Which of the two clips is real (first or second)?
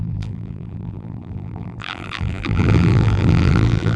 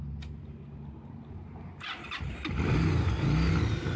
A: second